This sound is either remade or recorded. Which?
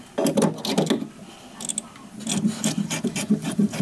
recorded